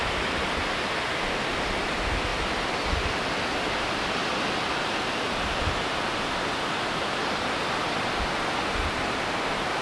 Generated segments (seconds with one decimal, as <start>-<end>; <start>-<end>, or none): none